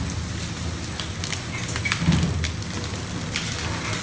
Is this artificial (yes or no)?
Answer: no